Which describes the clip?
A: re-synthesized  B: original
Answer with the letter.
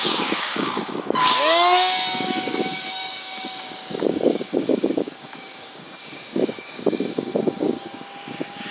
A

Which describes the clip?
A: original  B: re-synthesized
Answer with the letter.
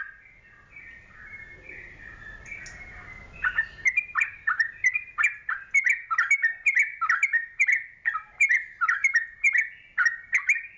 A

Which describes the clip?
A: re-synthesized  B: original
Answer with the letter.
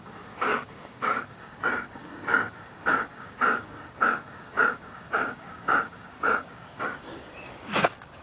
A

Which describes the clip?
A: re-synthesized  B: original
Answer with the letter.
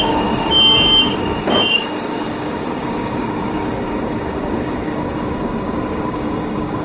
A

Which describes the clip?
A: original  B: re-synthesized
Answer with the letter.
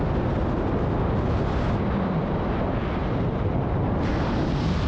A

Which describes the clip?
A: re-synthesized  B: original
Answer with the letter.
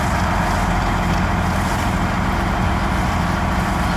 B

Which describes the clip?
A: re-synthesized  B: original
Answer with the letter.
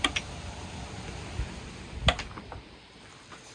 B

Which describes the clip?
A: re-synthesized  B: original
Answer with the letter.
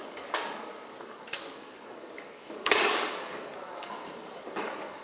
A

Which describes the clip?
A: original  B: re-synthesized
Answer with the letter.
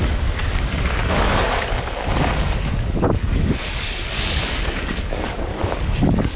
B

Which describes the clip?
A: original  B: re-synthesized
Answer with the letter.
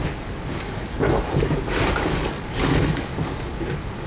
B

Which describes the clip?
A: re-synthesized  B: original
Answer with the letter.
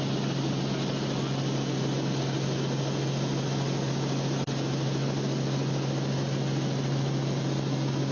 B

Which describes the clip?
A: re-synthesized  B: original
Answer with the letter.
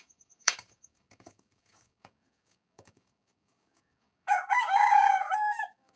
A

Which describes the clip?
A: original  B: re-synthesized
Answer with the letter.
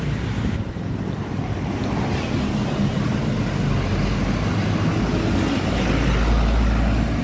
A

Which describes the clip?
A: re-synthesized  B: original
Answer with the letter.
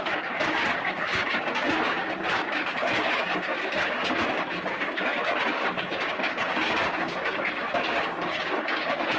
A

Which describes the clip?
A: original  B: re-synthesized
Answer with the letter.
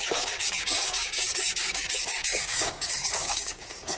B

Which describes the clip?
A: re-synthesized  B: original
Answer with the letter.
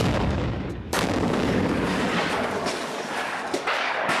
A